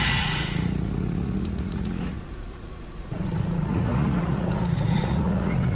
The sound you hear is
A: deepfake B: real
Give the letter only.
A